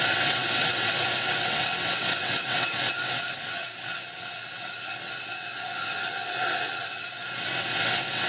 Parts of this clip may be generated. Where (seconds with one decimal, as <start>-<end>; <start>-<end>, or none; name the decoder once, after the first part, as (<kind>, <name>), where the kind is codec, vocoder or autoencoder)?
0.0-8.3 (vocoder, WaveNeXt)